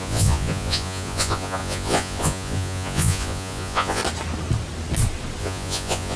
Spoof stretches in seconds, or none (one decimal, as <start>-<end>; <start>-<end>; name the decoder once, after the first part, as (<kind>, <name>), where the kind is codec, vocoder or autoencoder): 0.0-4.0 (vocoder, Vocos); 5.4-6.2